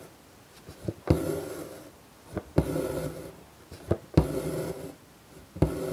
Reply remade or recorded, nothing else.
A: recorded